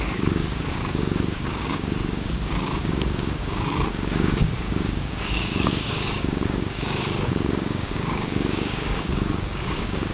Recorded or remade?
remade